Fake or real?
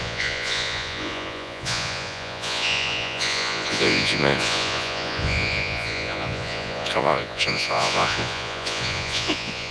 fake